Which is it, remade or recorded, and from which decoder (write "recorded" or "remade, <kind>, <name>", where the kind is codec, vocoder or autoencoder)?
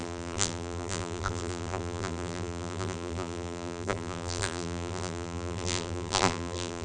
remade, vocoder, BigVGAN v2